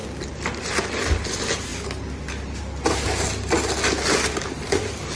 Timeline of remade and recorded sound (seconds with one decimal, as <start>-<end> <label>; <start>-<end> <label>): 0.0-5.2 recorded